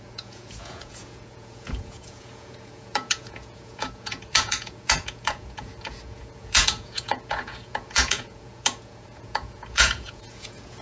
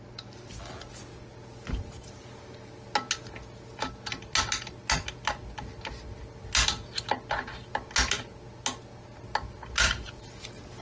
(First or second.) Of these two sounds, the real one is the second